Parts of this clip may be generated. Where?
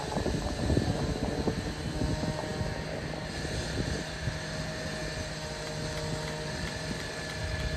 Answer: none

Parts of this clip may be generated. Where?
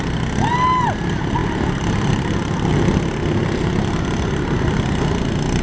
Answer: none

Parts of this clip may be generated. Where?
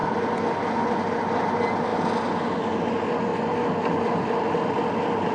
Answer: none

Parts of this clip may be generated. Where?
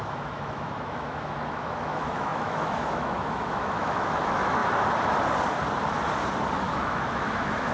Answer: 0.0-4.6 (autoencoder, DAC-VAE); 6.7-7.7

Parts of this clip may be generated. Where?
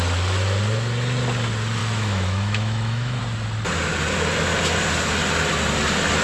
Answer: 1.8-3.2 (autoencoder, DAC-VAE)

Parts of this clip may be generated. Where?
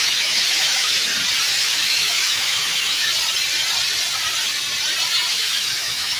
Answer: 0.0-1.1 (autoencoder, DAC-VAE); 1.6-3.1; 5.3-6.2